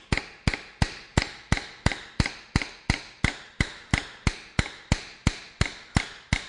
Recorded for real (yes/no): yes